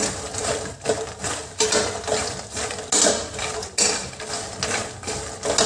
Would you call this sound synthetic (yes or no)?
no